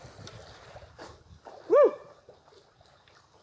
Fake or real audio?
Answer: real